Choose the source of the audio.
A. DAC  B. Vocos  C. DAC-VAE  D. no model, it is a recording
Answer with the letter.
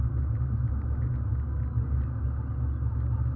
D